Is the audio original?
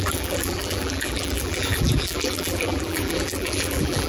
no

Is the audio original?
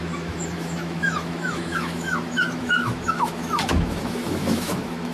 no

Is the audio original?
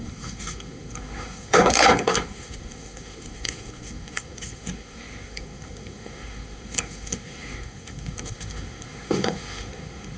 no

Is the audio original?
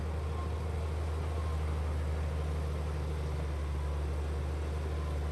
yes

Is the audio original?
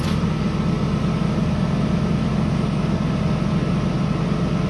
yes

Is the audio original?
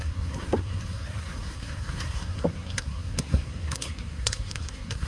no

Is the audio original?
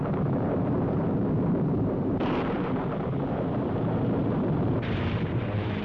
no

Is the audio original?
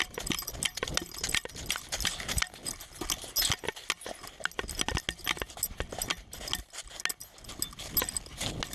yes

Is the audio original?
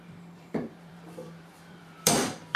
no